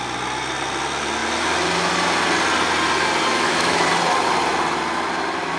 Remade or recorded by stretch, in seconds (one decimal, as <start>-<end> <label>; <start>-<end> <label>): 0.0-3.3 recorded; 3.3-3.9 remade; 3.9-5.6 recorded